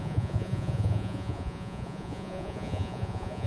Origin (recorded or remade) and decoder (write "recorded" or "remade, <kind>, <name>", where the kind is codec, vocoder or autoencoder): remade, vocoder, Vocos